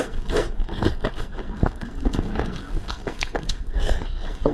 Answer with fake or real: fake